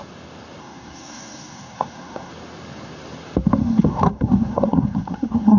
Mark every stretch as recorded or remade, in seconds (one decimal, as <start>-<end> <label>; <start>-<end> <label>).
0.0-0.6 recorded; 0.6-2.3 remade; 2.3-3.6 recorded; 3.6-5.6 remade